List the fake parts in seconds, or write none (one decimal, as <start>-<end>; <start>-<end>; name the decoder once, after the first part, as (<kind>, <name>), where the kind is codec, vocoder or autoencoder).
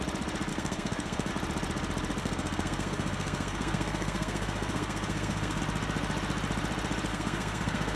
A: 0.5-1.3 (codec, SNAC); 2.2-5.6; 7.1-8.0